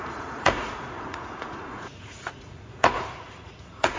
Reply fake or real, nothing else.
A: fake